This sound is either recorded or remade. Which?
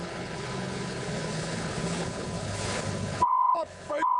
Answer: remade